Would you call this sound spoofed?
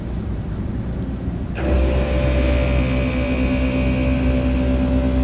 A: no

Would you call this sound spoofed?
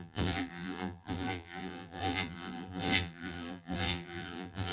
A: yes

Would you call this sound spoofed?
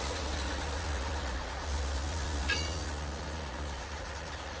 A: yes